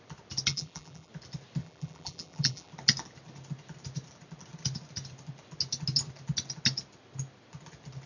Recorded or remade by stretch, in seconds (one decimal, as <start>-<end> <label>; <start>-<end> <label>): 0.0-0.5 recorded; 0.5-1.1 remade; 1.1-1.6 recorded; 1.6-2.7 remade; 2.7-8.1 recorded